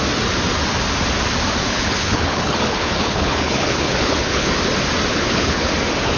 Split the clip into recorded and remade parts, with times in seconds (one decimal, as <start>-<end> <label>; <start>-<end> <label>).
0.0-1.6 recorded; 1.6-4.5 remade; 4.5-5.1 recorded; 5.1-5.7 remade; 5.7-6.2 recorded